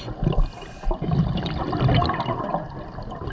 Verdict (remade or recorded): recorded